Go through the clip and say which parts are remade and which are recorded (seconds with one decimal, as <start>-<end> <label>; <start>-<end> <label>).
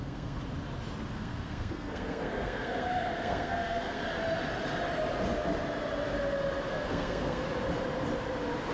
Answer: 0.0-0.4 remade; 0.4-1.1 recorded; 1.1-4.0 remade; 4.0-6.7 recorded; 6.7-7.4 remade; 7.4-8.7 recorded